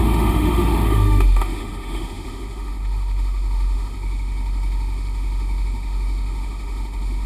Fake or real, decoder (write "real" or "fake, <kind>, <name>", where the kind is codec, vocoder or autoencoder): fake, autoencoder, DAC-VAE